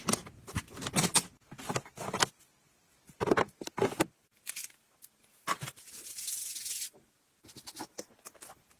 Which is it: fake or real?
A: real